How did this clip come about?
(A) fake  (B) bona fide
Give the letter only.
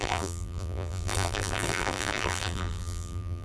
A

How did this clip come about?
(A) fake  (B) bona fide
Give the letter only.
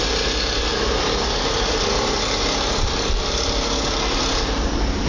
B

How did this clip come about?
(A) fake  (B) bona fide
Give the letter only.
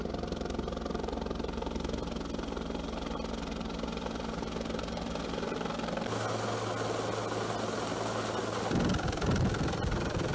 B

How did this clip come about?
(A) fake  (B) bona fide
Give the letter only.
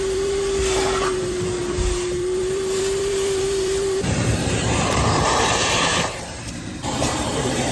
A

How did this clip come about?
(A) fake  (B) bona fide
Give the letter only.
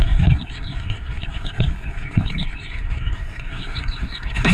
A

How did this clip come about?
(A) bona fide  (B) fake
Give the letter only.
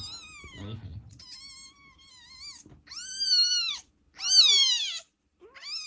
A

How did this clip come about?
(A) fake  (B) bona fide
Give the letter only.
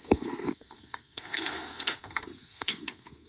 A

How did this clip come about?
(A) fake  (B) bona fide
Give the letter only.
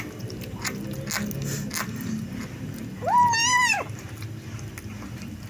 B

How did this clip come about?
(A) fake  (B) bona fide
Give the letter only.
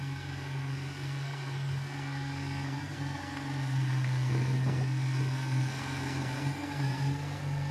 A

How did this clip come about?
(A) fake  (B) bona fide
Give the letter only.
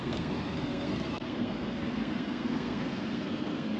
A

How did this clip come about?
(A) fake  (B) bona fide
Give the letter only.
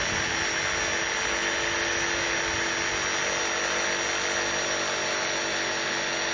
B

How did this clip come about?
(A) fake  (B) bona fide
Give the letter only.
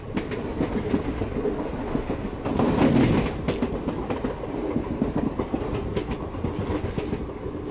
B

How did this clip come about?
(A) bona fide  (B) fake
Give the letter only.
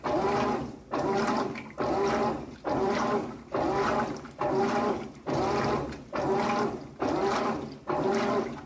A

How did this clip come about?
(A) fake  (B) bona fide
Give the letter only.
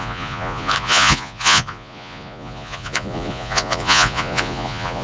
A